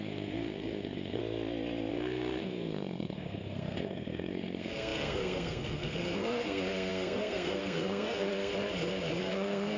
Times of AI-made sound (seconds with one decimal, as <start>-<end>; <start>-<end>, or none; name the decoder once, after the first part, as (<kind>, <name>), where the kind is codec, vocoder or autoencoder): 0.0-1.2 (codec, SNAC); 1.9-8.5; 9.2-9.8